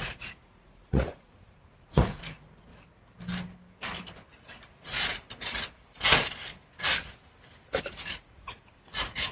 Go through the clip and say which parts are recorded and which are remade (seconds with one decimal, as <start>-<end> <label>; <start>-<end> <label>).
0.0-2.7 remade; 2.7-7.8 recorded; 7.8-9.3 remade